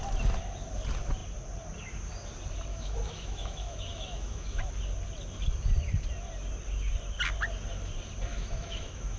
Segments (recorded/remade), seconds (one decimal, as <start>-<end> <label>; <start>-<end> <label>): 0.0-2.7 recorded; 2.7-4.7 remade; 4.7-8.3 recorded; 8.3-9.2 remade